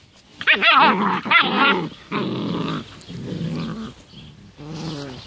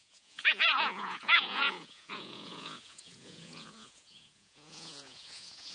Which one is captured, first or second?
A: first